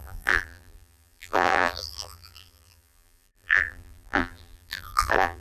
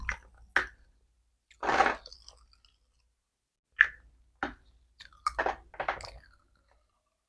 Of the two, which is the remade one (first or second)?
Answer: first